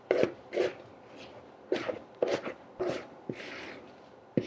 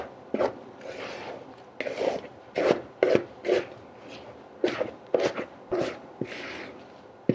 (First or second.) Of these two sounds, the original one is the second